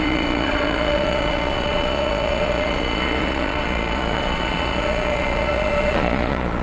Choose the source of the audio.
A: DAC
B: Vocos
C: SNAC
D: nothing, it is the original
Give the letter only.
B